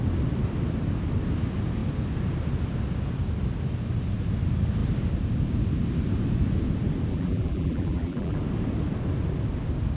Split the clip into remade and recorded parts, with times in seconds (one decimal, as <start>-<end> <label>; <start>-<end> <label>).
0.0-7.1 recorded; 7.1-8.4 remade; 8.4-10.0 recorded